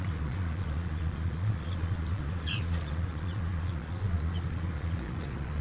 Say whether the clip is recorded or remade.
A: remade